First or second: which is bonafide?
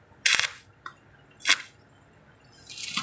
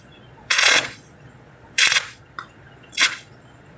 first